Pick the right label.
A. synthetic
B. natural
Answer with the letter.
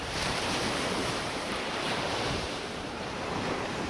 A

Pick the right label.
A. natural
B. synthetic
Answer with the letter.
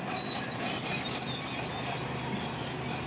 A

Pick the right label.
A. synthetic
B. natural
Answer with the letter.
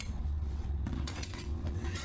A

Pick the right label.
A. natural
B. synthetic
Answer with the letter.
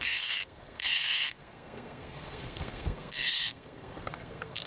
B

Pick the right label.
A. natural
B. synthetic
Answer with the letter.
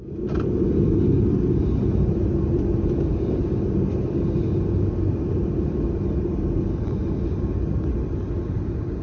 A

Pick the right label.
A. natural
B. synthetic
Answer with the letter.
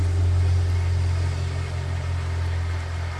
A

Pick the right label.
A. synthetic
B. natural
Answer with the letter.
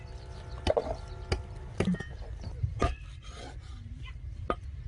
A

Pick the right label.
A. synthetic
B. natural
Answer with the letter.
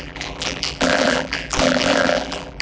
A